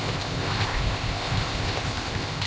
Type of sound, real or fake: fake